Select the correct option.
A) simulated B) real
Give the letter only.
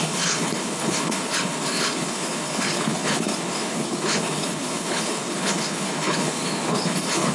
A